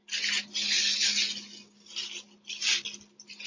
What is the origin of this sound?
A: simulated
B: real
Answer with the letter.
B